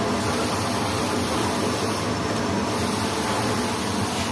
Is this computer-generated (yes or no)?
no